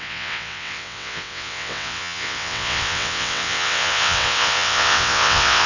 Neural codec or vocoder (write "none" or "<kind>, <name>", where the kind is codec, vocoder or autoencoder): vocoder, WaveNeXt